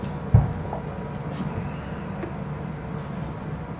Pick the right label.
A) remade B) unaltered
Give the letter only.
B